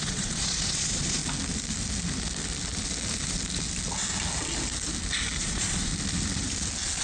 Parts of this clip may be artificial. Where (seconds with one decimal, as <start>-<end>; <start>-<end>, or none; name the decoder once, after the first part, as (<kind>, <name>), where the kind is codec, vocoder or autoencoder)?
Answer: 0.0-1.2 (vocoder, Vocos); 5.4-5.9